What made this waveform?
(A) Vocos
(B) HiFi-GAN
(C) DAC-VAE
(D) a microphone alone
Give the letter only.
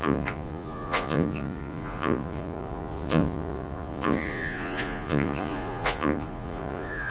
A